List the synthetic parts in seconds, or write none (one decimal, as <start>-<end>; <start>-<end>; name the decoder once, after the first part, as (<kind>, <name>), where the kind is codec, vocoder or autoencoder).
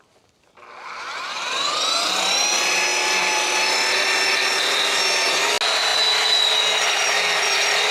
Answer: none